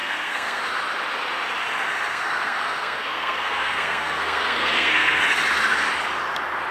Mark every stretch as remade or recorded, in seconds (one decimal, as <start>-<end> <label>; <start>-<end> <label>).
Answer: 0.0-0.6 remade; 0.6-2.1 recorded; 2.1-5.2 remade; 5.2-6.7 recorded